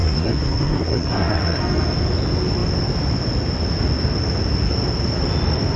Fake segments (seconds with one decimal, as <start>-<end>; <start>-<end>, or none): 0.0-1.6